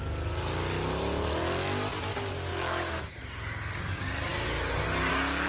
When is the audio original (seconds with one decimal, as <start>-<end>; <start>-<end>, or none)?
0.0-2.5; 3.1-5.5